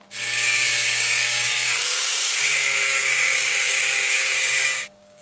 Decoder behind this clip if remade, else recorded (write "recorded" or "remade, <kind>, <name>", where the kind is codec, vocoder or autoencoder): remade, codec, DAC